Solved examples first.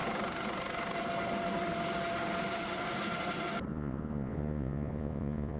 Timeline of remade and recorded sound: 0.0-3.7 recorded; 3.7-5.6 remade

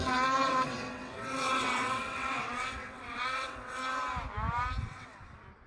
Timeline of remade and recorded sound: 0.0-3.8 remade; 3.8-4.8 recorded; 4.8-5.7 remade

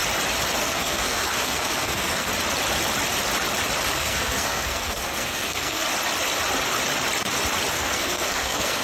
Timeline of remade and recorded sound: 0.0-0.6 recorded; 0.6-2.3 remade; 2.3-3.9 recorded; 3.9-5.8 remade; 5.8-7.7 recorded; 7.7-8.8 remade

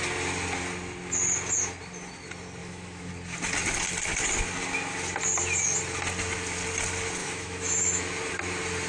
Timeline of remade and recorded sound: 0.0-2.6 recorded; 2.6-3.1 remade; 3.1-7.2 recorded; 7.2-8.1 remade; 8.1-8.9 recorded

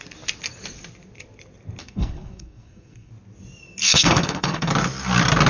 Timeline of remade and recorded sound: 0.0-1.8 recorded; 1.8-3.1 remade; 3.1-3.8 recorded; 3.8-4.7 remade; 4.7-5.5 recorded